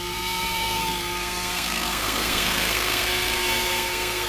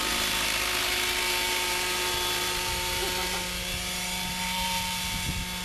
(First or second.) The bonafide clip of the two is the second